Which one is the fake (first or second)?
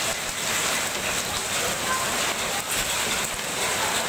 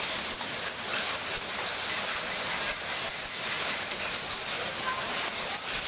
second